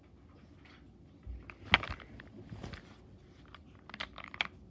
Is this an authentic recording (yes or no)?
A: yes